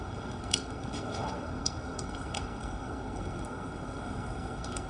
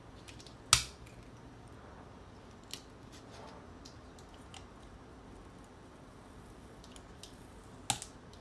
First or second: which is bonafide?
second